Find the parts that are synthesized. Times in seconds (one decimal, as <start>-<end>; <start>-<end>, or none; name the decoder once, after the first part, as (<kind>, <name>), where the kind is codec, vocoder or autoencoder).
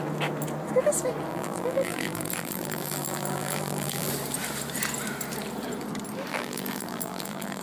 1.3-4.1 (vocoder, BigVGAN v2); 6.3-7.6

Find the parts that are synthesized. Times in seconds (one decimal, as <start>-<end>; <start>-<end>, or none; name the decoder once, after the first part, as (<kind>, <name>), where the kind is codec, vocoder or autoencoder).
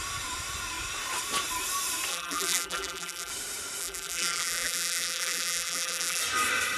2.1-3.3 (vocoder, BigVGAN v2); 3.8-6.2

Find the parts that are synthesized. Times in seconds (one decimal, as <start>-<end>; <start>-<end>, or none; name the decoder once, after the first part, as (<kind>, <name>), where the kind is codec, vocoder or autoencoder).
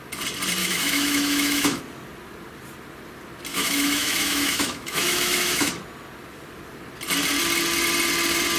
0.6-1.8 (autoencoder, DAC-VAE); 3.5-5.7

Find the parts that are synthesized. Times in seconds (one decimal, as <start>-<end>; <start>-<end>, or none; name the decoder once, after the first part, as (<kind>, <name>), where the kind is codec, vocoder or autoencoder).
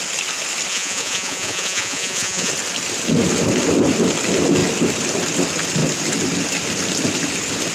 0.7-2.5 (vocoder, Vocos)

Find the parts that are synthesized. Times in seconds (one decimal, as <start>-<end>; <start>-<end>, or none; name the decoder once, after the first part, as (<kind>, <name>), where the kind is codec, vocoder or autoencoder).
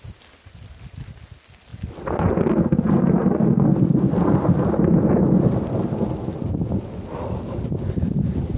none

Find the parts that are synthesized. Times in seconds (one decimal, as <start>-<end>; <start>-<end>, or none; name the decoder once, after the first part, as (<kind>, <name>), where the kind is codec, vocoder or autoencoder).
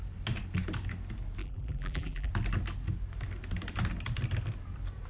1.4-2.3 (vocoder, BigVGAN v2)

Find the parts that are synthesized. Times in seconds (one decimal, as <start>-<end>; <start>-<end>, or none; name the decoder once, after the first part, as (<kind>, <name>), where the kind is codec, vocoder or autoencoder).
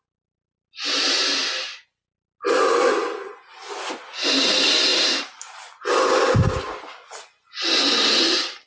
4.9-5.6 (vocoder, BigVGAN v2)